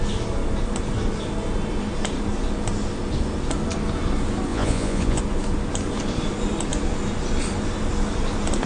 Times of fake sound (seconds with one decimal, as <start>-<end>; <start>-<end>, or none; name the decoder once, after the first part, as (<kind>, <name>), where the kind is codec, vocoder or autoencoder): 4.5-5.2 (vocoder, Vocos)